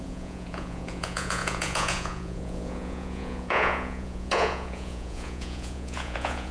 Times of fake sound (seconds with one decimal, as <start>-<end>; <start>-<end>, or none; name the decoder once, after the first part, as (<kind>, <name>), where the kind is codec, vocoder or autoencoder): 0.0-6.5 (vocoder, Vocos)